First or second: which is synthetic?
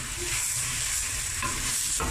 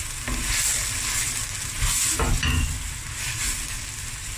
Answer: first